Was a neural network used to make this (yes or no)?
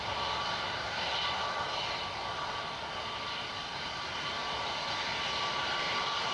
no